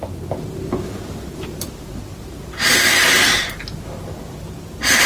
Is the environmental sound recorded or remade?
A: recorded